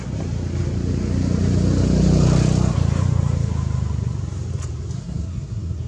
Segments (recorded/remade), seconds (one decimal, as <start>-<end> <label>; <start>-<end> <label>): 0.0-5.0 recorded; 5.0-5.9 remade